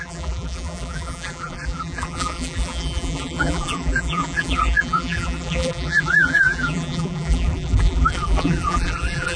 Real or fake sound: fake